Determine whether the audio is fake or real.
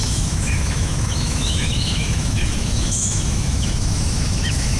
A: fake